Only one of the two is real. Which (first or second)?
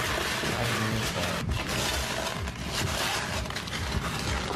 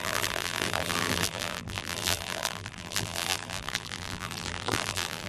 first